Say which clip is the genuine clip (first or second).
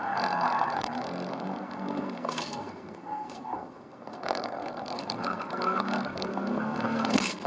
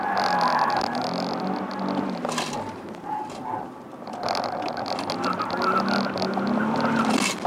second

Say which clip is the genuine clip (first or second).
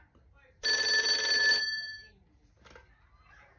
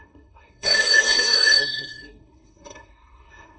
first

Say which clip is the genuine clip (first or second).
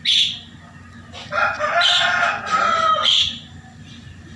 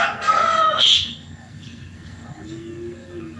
first